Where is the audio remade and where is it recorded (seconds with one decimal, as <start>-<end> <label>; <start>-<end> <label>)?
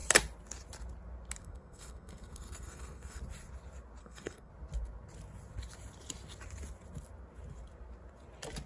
0.0-1.4 recorded; 1.4-3.2 remade; 3.2-4.0 recorded; 4.0-4.5 remade; 4.5-8.7 recorded